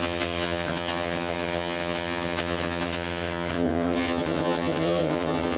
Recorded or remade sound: remade